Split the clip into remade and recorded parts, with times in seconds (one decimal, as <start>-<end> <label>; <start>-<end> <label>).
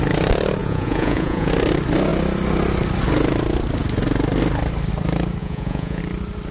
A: 0.0-0.6 recorded; 0.6-1.5 remade; 1.5-5.4 recorded; 5.4-6.0 remade; 6.0-6.5 recorded